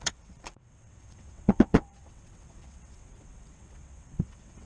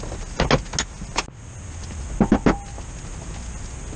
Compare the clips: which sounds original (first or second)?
second